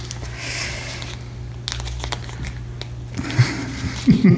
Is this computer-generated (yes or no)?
no